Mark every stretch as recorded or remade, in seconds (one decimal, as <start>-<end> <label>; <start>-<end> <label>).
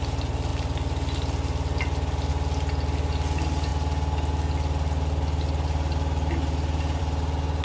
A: 0.0-7.6 recorded